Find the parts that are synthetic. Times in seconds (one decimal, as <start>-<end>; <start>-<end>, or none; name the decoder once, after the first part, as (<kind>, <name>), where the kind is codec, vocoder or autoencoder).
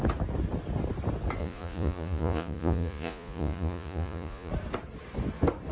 1.4-4.5 (vocoder, Vocos)